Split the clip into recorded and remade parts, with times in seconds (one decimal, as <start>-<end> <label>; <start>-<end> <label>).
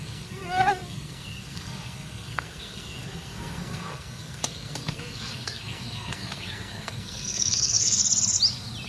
0.0-8.0 remade; 8.0-8.9 recorded